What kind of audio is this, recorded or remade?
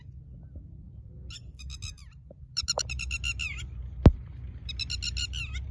recorded